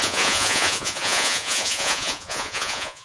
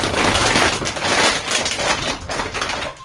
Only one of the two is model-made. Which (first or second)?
first